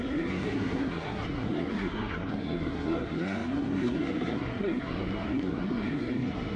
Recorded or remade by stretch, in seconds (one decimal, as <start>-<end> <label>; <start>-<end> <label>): 0.0-6.6 remade